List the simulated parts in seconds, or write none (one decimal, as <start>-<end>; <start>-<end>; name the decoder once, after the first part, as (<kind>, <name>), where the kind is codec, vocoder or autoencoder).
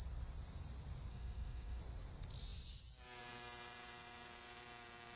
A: 1.1-1.8 (autoencoder, DAC-VAE)